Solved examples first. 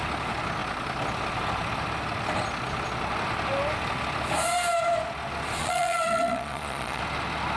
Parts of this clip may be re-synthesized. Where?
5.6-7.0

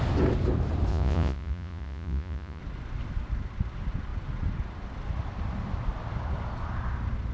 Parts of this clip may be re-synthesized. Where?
0.9-2.6

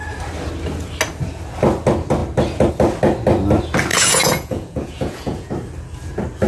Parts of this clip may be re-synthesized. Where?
3.9-5.5